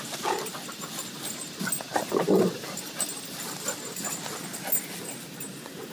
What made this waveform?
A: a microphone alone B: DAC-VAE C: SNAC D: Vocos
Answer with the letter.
A